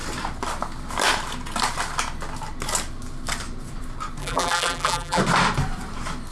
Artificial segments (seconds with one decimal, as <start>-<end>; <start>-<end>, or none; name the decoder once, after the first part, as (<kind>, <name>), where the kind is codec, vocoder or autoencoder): 4.2-5.2 (vocoder, BigVGAN v2)